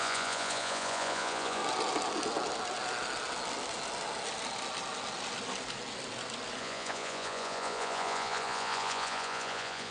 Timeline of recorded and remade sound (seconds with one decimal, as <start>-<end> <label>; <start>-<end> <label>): 0.0-1.6 remade; 1.6-6.6 recorded; 6.6-9.9 remade